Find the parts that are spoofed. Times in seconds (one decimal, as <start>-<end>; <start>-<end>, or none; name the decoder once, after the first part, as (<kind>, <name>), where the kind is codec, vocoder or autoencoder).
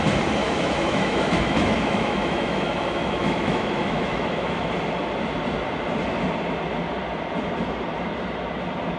0.4-4.7 (autoencoder, DAC-VAE)